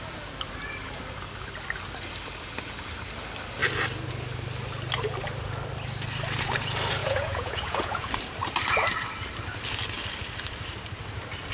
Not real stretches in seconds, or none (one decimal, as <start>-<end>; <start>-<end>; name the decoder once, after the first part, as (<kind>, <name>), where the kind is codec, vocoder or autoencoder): 7.0-8.1 (vocoder, Vocos)